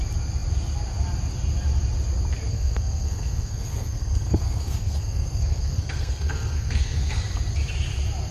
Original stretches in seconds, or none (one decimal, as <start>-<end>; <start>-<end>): 0.0-2.5; 7.2-8.3